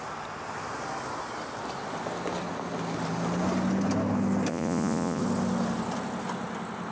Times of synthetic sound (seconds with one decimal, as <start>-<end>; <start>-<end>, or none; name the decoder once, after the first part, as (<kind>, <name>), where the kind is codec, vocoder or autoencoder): 4.5-5.2 (vocoder, Vocos)